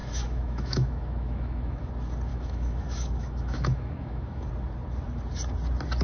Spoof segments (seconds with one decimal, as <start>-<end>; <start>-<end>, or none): 0.0-1.9; 2.3-4.5